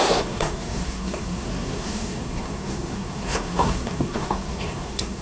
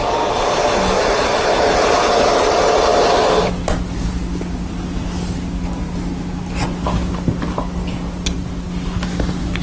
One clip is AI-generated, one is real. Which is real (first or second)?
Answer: second